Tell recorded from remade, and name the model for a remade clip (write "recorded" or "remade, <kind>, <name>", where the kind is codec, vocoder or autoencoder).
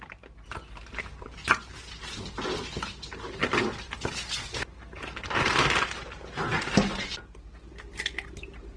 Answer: recorded